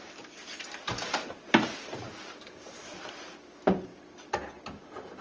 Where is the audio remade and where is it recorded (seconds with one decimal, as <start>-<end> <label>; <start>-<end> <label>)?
0.0-3.9 remade; 3.9-4.6 recorded; 4.6-5.2 remade